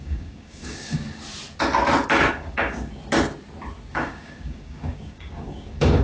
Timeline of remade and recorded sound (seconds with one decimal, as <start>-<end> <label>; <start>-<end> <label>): 0.0-1.2 remade; 1.2-2.3 recorded; 2.3-3.0 remade; 3.0-3.9 recorded; 3.9-6.0 remade